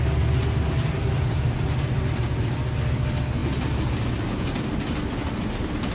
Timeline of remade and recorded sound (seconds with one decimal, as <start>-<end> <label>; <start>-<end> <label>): 0.0-5.9 recorded